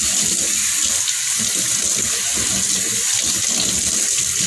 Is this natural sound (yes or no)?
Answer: yes